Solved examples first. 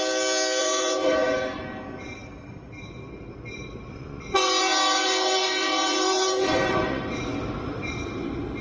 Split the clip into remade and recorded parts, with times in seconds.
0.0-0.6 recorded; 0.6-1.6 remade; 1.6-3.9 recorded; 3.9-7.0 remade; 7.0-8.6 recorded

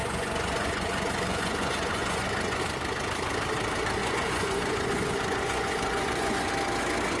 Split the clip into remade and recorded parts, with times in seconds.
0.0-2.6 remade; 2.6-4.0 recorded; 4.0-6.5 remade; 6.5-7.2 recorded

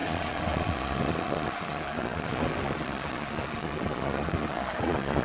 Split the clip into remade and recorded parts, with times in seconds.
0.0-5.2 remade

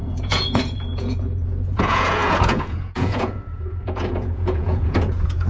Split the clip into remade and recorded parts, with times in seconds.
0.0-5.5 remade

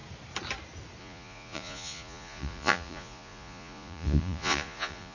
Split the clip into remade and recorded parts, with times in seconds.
0.0-1.0 recorded; 1.0-5.1 remade